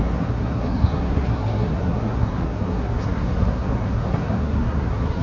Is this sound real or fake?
fake